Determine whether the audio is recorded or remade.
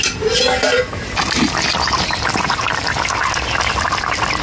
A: recorded